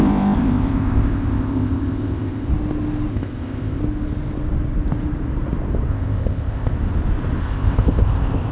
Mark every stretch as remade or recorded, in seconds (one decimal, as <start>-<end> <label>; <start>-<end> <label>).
0.0-2.5 remade; 2.5-3.1 recorded; 3.1-3.8 remade; 3.8-5.9 recorded; 5.9-6.7 remade; 6.7-7.4 recorded; 7.4-8.5 remade